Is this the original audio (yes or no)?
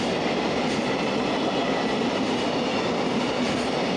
yes